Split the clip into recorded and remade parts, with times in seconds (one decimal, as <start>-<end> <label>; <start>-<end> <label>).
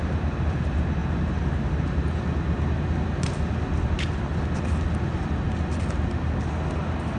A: 0.0-7.2 recorded